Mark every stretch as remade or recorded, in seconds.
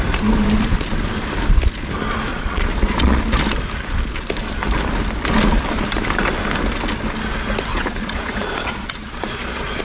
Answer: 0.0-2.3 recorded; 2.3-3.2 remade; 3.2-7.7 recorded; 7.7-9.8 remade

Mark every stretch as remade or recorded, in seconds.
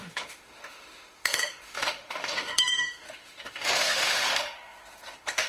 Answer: 0.0-5.5 remade